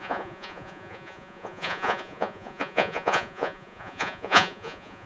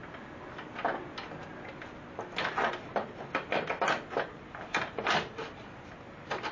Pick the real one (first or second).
second